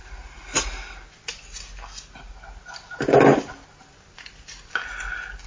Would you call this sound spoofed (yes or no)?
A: no